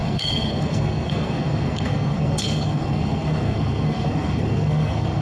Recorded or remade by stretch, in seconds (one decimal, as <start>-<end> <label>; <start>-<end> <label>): 0.0-5.2 remade